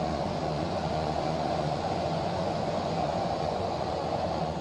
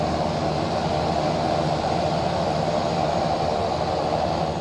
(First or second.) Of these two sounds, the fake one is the first